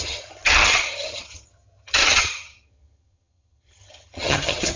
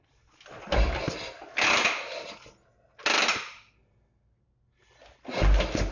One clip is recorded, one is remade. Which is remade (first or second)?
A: first